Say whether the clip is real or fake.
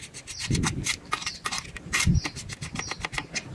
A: real